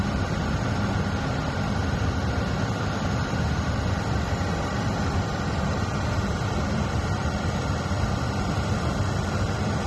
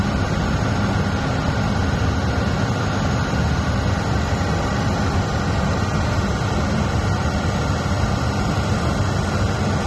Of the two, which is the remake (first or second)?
first